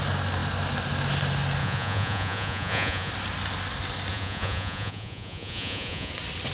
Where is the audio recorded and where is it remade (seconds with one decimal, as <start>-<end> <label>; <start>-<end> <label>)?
0.0-1.6 recorded; 1.6-3.1 remade; 3.1-4.1 recorded; 4.1-6.1 remade; 6.1-6.5 recorded